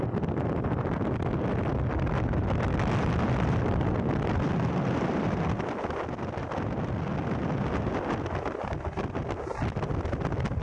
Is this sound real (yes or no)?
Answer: yes